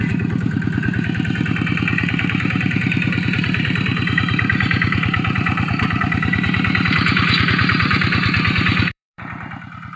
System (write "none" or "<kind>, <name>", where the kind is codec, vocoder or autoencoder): vocoder, BigVGAN v2